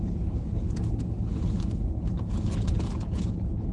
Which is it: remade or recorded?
remade